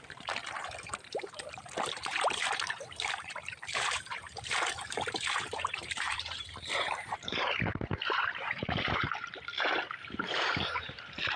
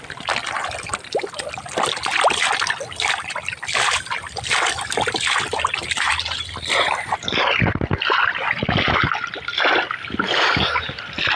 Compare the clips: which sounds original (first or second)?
second